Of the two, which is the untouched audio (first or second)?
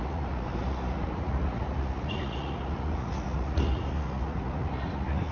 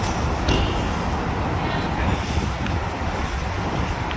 second